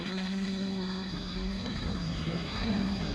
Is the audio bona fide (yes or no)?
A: no